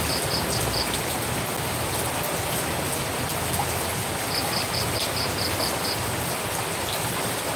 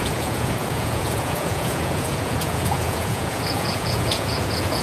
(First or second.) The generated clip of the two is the second